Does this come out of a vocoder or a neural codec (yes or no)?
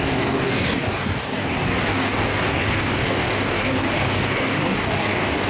yes